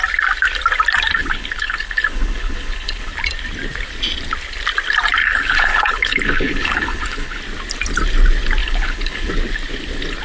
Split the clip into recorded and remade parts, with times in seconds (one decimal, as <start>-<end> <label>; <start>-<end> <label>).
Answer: 0.0-1.2 recorded; 1.2-3.1 remade; 3.1-5.2 recorded; 5.2-7.4 remade; 7.4-8.6 recorded; 8.6-9.3 remade; 9.3-10.2 recorded